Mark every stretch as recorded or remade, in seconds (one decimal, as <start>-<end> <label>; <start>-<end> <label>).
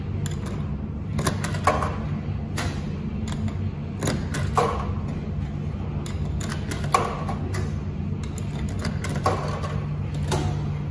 0.0-10.9 recorded